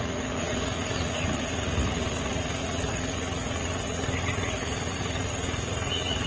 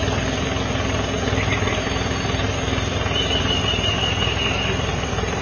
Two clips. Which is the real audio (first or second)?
second